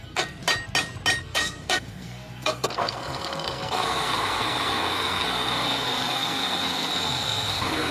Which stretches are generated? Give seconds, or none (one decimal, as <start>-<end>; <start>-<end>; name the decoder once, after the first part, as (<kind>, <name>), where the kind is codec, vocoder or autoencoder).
0.0-0.4 (codec, SNAC); 1.2-7.9

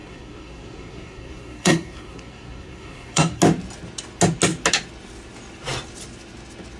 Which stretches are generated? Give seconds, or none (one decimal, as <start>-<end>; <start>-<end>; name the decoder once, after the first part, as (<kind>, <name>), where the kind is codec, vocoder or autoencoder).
0.0-3.4 (codec, SNAC)

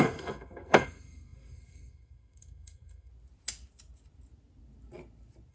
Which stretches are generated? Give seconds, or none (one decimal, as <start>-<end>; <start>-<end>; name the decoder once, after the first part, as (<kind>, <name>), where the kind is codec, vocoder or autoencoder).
0.0-3.1 (codec, SNAC)

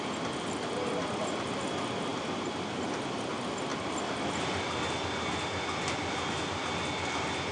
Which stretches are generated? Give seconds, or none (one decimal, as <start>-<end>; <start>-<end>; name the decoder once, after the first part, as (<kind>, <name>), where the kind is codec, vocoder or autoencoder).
none

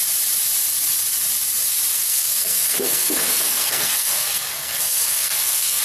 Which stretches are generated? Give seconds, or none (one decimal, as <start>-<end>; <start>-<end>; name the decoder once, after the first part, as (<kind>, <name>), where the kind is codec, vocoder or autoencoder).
1.9-5.8 (codec, SNAC)